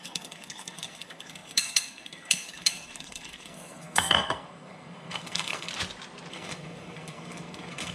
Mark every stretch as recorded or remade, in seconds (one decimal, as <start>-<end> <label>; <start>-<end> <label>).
0.0-5.7 remade; 5.7-6.3 recorded; 6.3-7.9 remade